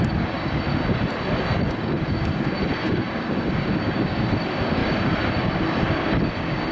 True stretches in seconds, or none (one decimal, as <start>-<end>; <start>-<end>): 0.7-1.5